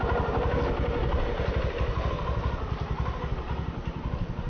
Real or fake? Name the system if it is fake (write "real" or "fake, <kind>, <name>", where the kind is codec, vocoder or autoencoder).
real